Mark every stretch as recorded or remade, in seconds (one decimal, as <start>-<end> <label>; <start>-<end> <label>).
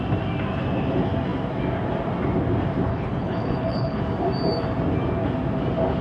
0.0-2.9 recorded; 2.9-4.0 remade; 4.0-6.0 recorded